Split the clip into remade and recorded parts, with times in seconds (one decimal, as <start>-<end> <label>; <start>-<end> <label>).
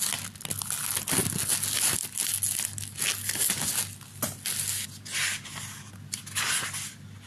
0.0-7.3 recorded